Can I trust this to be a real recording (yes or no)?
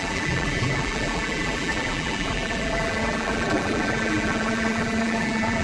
no